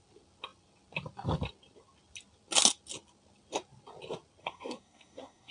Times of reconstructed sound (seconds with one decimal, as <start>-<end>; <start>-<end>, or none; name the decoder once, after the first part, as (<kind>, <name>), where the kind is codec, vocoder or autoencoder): 4.4-5.5 (codec, SNAC)